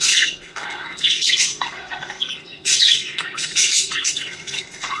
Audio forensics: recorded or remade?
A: remade